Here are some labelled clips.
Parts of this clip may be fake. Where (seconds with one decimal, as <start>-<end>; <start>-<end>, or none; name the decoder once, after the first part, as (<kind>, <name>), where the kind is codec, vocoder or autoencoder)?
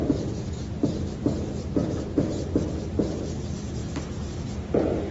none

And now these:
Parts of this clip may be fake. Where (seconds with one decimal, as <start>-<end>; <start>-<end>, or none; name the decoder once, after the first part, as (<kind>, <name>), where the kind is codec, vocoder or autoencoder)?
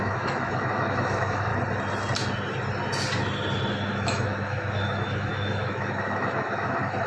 0.0-1.5 (autoencoder, DAC-VAE); 3.7-7.1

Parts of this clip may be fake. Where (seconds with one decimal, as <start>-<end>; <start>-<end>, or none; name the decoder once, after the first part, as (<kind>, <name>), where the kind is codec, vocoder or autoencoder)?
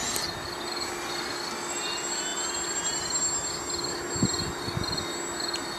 none